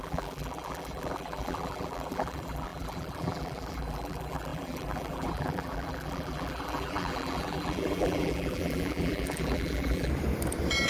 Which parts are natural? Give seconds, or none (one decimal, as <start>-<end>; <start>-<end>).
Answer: 10.1-10.9